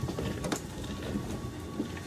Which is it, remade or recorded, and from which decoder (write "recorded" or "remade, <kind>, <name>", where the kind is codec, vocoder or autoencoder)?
recorded